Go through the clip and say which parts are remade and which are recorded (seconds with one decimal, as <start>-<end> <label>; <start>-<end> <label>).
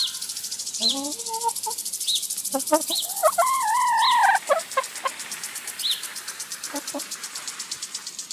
0.0-0.5 recorded; 0.5-1.2 remade; 1.2-3.2 recorded; 3.2-3.8 remade; 3.8-6.1 recorded; 6.1-7.8 remade; 7.8-8.3 recorded